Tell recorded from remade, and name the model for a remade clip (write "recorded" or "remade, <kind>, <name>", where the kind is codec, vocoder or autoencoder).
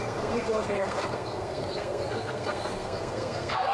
remade, codec, SNAC